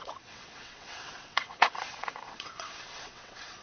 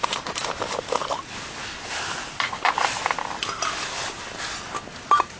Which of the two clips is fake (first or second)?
first